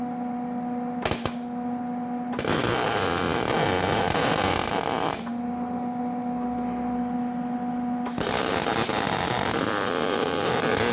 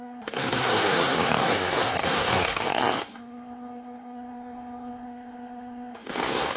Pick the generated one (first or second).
second